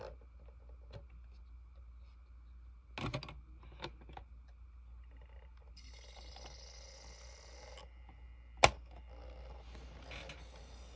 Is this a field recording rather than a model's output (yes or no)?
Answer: yes